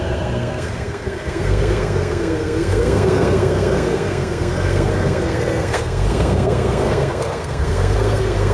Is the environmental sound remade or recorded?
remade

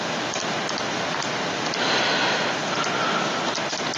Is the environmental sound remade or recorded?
recorded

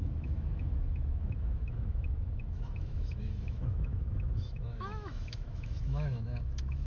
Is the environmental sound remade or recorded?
remade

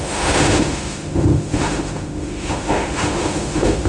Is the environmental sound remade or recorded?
remade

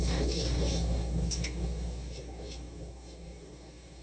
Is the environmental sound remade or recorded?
remade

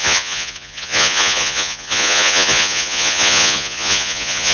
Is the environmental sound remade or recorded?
remade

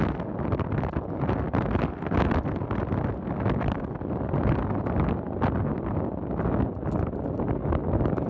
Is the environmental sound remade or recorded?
recorded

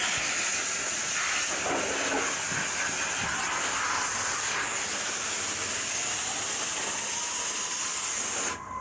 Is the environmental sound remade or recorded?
recorded